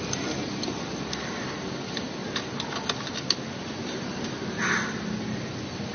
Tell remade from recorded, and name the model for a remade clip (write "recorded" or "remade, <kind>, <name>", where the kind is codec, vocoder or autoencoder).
recorded